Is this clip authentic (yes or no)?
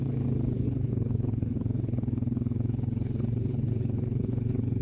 no